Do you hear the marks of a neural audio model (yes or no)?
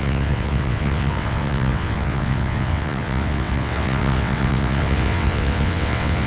yes